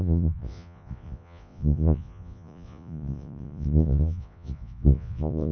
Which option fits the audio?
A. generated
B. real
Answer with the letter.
A